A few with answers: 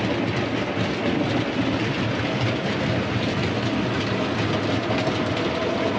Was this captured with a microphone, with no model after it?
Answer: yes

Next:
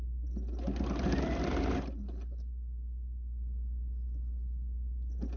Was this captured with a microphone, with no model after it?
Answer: yes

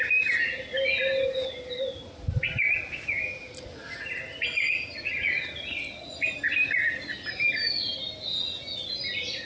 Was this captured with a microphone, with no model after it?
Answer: yes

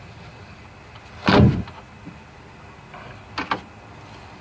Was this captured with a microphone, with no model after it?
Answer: yes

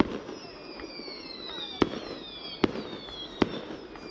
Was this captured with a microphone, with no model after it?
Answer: yes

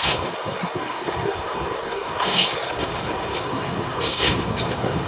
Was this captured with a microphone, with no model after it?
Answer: no